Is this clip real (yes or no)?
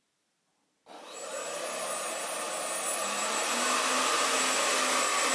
yes